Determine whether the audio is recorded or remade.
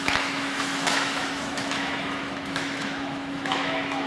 remade